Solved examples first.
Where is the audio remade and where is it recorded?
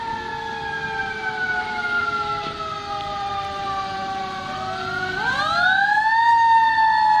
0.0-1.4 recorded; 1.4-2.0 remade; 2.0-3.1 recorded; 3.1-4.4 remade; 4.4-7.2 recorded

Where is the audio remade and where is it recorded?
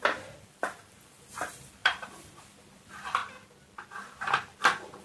0.0-1.8 recorded; 1.8-2.4 remade; 2.4-5.0 recorded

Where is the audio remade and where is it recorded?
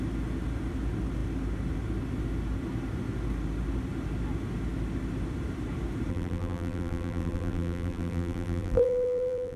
0.0-6.1 recorded; 6.1-9.6 remade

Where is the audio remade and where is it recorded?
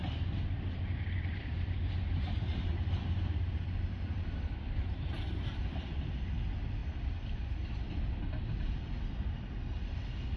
0.0-5.1 remade; 5.1-6.8 recorded; 6.8-8.0 remade; 8.0-10.4 recorded